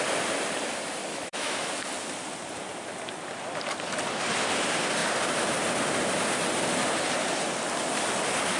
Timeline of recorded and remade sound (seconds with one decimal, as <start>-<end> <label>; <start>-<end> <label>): 0.0-1.1 recorded; 1.1-1.7 remade; 1.7-8.6 recorded